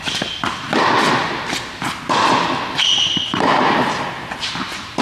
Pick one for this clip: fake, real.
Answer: real